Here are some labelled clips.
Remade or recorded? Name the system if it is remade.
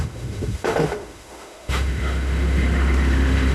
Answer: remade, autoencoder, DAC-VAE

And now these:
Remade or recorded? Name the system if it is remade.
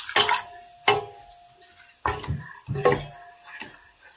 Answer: recorded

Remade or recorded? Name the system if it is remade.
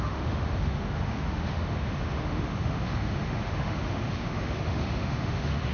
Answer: remade, autoencoder, DAC-VAE